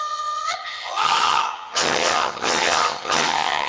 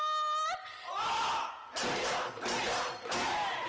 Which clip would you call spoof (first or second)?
first